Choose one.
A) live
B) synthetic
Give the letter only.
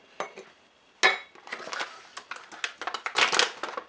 A